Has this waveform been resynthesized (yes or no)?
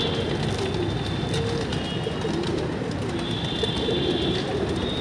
no